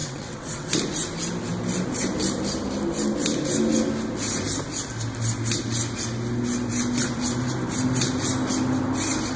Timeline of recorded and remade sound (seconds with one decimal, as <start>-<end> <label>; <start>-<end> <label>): 0.0-0.7 remade; 0.7-9.4 recorded